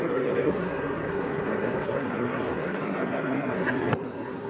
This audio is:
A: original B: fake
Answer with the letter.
B